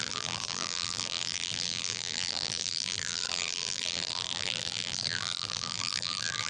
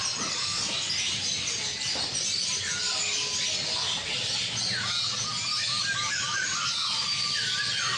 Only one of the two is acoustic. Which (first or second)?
second